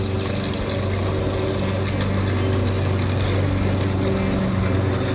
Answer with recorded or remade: recorded